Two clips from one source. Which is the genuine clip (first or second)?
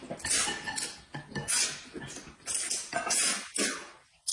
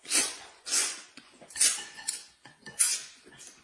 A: first